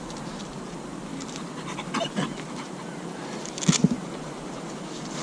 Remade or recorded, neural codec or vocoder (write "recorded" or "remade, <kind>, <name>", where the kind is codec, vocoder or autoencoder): recorded